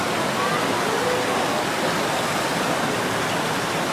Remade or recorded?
recorded